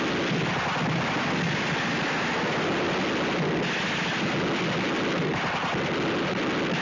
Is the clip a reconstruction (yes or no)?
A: no